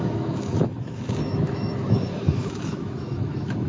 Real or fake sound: fake